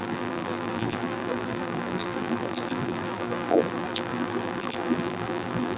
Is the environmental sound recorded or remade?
remade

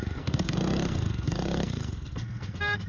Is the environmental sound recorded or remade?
remade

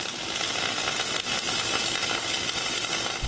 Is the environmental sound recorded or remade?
recorded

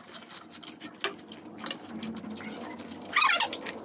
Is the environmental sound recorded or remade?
recorded